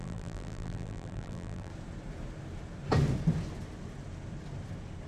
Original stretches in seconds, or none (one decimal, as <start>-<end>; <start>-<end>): 1.7-5.1

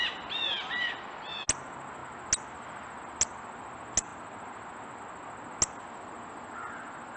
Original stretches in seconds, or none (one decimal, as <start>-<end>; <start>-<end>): 0.0-7.2